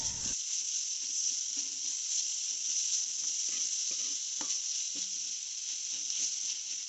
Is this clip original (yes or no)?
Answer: yes